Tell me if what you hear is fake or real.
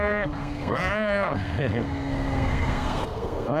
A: fake